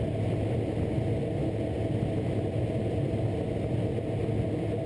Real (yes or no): yes